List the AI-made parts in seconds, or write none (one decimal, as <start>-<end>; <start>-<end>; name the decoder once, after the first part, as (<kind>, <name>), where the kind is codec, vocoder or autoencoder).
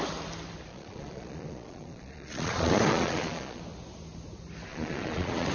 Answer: 0.7-3.6 (vocoder, Vocos); 4.7-5.5